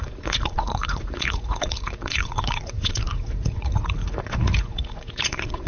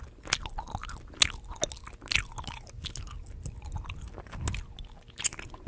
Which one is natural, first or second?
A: second